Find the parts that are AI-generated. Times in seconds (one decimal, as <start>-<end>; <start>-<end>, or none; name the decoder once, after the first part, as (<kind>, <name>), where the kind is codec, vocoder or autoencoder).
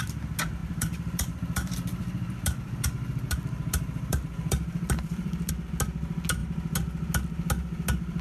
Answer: 0.6-5.5 (vocoder, BigVGAN v2)